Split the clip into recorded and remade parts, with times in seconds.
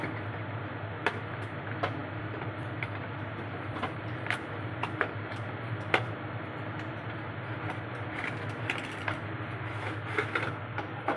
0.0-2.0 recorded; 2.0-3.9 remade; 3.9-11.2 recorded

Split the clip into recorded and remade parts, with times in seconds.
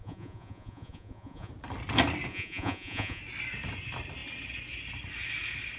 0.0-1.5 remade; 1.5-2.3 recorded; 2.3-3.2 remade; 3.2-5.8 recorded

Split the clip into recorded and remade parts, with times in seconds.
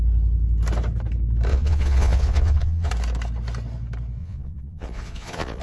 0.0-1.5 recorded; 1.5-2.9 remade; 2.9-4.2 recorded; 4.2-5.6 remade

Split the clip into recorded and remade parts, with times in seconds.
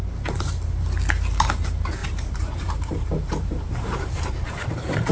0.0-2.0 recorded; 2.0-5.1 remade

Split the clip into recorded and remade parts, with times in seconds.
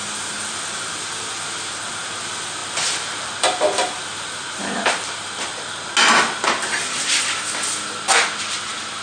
0.0-9.0 recorded